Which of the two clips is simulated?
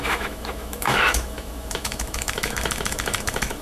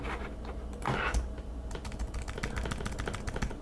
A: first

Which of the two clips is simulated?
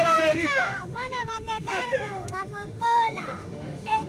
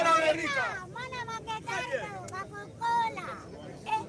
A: first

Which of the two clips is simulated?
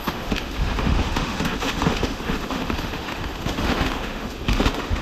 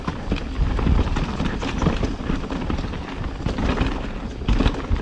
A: first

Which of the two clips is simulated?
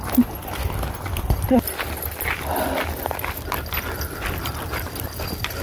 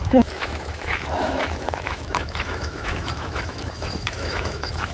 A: second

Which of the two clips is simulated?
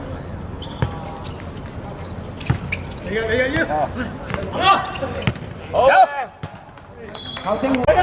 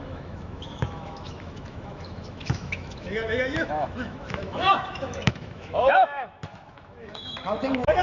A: second